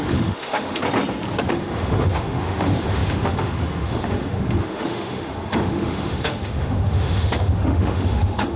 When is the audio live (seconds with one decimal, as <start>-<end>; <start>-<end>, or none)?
0.8-1.5